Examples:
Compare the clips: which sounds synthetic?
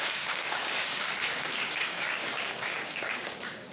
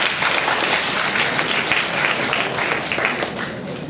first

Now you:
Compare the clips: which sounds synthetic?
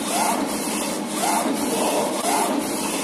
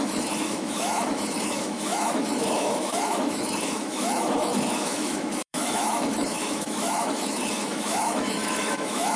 second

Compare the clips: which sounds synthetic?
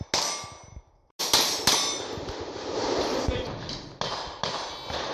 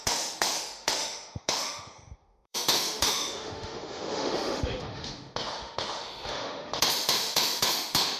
second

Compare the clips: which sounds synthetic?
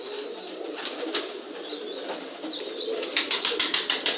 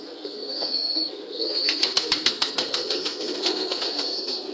second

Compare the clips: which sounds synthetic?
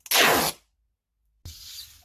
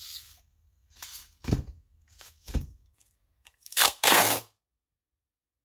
second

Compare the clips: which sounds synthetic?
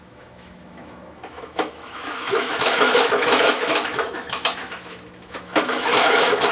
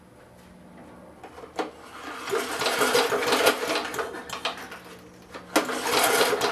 first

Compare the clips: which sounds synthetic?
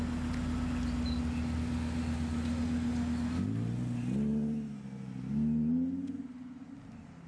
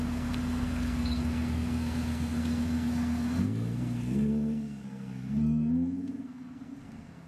second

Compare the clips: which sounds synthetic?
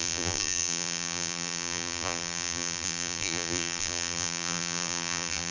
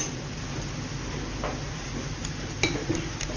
first